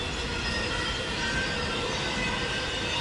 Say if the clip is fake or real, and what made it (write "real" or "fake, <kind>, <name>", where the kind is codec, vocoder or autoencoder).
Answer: real